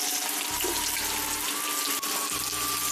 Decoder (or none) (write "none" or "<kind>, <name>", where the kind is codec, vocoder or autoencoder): none